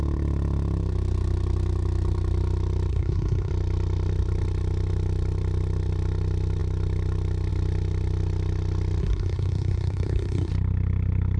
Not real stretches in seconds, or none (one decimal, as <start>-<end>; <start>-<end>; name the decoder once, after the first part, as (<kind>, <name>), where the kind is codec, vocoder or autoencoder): 2.9-3.5 (codec, SNAC); 9.0-10.5